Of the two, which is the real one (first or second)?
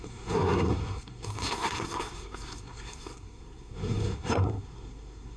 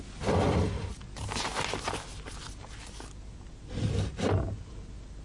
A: second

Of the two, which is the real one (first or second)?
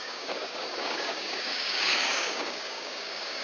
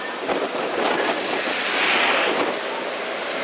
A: second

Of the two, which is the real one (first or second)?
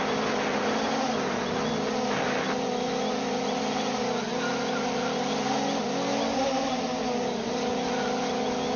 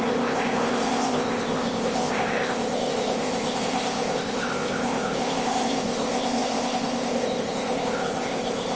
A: first